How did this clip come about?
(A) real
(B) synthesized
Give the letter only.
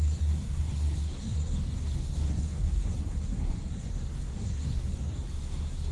B